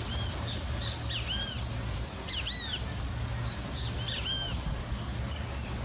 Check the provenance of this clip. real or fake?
real